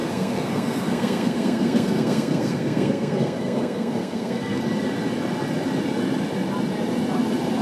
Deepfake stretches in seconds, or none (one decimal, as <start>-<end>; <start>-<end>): 0.0-4.6